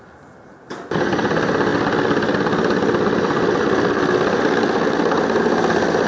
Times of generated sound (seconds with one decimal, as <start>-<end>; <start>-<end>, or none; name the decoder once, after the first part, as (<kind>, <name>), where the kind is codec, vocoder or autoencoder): none